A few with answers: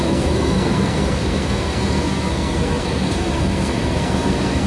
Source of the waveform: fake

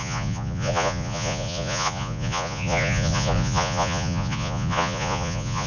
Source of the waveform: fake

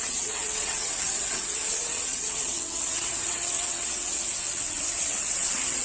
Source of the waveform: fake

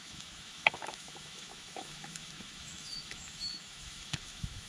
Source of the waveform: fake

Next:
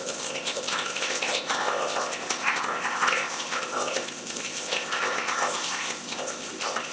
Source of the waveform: fake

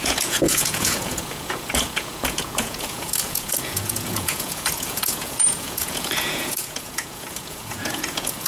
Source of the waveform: fake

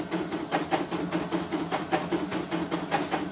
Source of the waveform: real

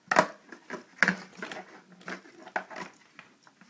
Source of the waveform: real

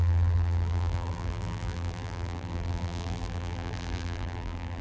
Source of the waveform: fake